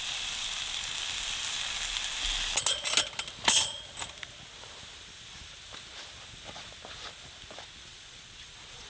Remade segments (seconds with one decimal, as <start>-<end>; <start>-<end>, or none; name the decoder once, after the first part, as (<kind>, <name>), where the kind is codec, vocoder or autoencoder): 7.9-8.9 (vocoder, Vocos)